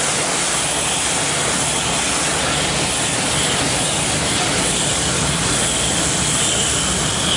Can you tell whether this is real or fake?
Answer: real